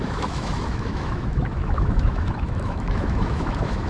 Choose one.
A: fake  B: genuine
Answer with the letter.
A